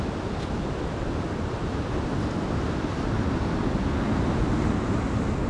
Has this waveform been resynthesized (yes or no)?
no